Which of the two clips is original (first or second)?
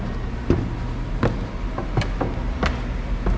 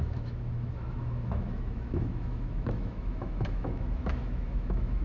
first